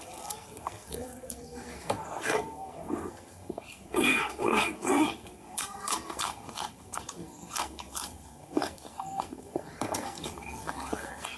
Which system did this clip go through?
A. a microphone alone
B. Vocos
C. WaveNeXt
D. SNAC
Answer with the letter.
D